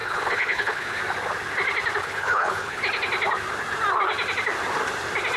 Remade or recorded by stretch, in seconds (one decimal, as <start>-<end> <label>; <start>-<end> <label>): 0.0-1.0 remade; 1.0-2.0 recorded; 2.0-2.8 remade; 2.8-5.4 recorded